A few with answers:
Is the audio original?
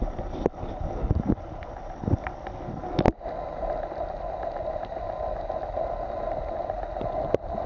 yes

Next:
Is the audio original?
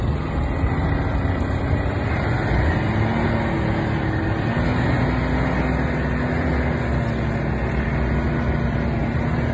yes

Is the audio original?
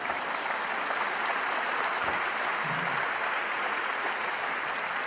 yes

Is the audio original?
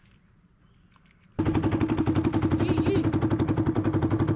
yes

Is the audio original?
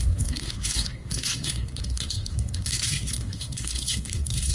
no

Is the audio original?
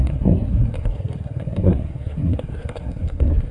no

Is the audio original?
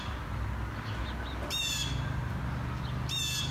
yes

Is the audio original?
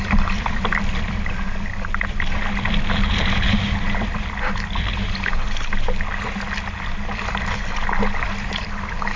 yes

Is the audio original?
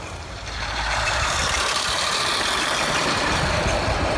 no